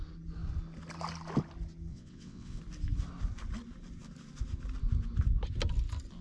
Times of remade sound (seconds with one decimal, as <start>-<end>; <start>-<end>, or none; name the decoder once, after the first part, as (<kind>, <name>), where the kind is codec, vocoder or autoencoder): 1.9-2.6 (vocoder, WaveNeXt)

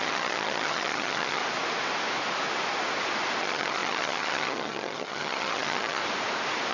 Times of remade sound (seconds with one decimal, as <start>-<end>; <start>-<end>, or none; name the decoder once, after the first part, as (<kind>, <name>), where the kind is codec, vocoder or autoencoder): 0.0-1.4 (vocoder, HiFi-GAN); 3.4-6.0

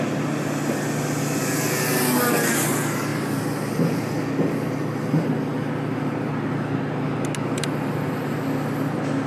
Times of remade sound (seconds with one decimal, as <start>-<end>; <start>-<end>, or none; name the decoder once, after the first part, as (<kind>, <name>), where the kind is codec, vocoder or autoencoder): none

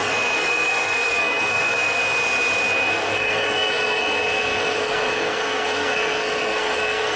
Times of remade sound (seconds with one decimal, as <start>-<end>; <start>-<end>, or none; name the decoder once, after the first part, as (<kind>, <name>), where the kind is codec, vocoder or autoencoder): 0.0-2.0 (codec, SNAC); 2.9-7.2

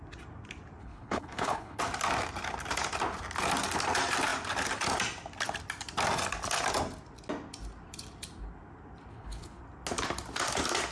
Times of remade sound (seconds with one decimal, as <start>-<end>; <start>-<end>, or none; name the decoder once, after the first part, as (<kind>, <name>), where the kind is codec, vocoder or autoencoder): 0.8-1.8 (codec, HILCodec); 9.1-9.6

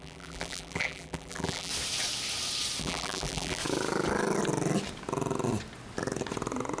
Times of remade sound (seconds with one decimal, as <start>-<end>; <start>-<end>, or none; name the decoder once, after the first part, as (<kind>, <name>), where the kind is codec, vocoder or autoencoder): 0.0-1.7 (vocoder, BigVGAN v2); 2.8-3.6

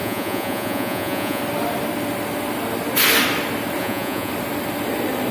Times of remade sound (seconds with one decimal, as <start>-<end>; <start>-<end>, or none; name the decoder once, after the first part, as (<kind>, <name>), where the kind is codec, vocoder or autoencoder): 0.0-1.4 (vocoder, Vocos); 3.8-4.3

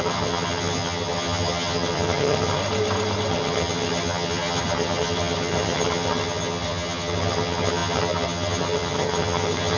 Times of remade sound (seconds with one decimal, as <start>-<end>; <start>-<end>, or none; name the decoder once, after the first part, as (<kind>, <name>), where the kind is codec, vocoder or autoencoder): 0.0-2.6 (vocoder, HiFi-GAN); 3.3-9.8